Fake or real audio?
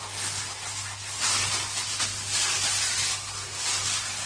real